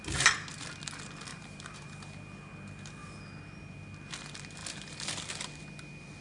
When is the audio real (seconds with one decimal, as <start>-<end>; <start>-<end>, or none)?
0.0-1.3; 1.9-6.2